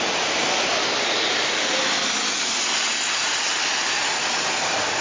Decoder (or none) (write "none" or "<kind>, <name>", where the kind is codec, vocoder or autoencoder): none